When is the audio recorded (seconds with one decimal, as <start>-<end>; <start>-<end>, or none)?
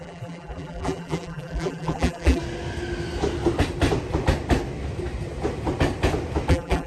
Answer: 2.4-6.5